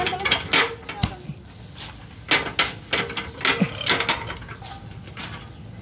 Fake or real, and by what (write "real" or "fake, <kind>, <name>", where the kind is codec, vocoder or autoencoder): real